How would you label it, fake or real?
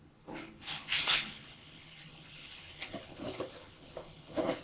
fake